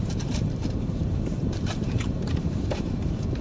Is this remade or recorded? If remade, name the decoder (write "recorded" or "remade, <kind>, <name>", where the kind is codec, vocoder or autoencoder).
remade, vocoder, BigVGAN v2